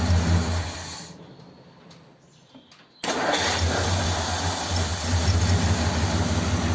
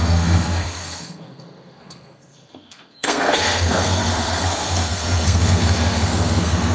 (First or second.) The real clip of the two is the first